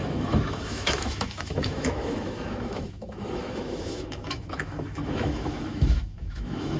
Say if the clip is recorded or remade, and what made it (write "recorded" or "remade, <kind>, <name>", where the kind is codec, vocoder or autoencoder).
remade, autoencoder, DAC-VAE